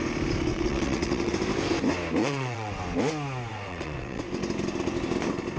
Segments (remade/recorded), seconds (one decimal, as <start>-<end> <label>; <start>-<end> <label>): 0.0-0.5 recorded; 0.5-1.3 remade; 1.3-2.2 recorded; 2.2-2.8 remade; 2.8-3.5 recorded; 3.5-4.2 remade; 4.2-5.6 recorded